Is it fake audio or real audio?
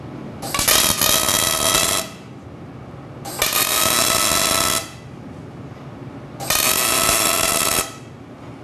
real